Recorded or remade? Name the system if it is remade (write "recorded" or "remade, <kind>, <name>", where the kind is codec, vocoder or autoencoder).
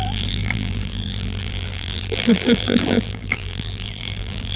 remade, vocoder, BigVGAN v2